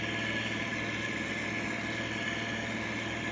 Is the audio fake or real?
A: real